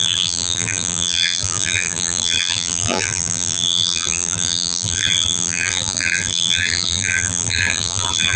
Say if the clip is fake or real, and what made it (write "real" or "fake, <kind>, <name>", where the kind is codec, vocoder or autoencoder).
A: fake, vocoder, BigVGAN v2